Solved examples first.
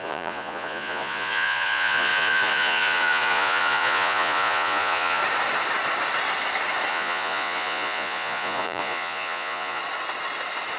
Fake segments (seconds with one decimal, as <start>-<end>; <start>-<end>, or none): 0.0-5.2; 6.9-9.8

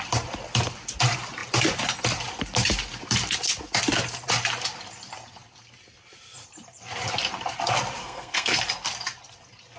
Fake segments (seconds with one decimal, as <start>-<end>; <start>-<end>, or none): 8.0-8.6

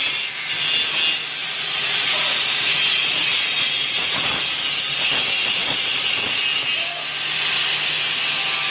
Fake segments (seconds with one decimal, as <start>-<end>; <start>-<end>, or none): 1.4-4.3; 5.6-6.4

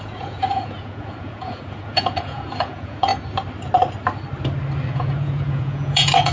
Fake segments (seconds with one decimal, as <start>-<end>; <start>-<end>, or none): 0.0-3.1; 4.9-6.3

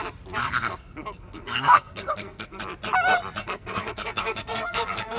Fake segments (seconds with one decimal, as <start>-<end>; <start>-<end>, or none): 0.4-2.6; 3.4-5.2

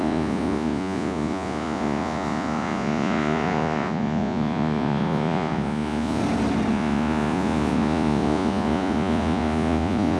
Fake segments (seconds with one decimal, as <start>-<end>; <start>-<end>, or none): 0.0-6.2; 6.7-10.2

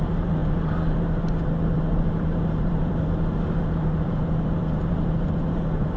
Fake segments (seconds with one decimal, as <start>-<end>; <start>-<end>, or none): 0.0-6.0